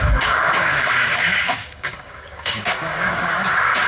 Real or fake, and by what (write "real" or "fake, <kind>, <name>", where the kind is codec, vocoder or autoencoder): fake, codec, DAC